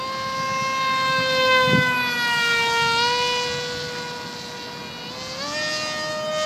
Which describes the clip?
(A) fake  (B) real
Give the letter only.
B